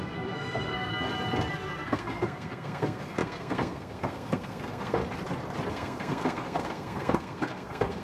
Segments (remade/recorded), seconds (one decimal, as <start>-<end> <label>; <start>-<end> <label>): 0.0-0.9 remade; 0.9-1.5 recorded; 1.5-5.0 remade; 5.0-5.7 recorded; 5.7-8.0 remade